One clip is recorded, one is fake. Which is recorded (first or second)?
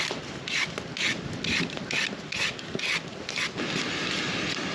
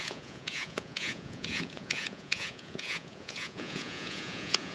first